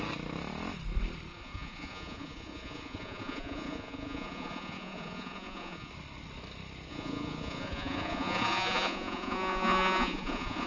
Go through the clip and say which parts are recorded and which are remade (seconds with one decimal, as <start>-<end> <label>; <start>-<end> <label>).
0.0-1.3 recorded; 1.3-5.9 remade; 5.9-6.9 recorded; 6.9-10.7 remade